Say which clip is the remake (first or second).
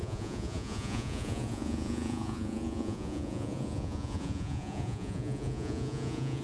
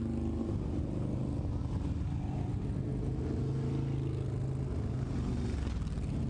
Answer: first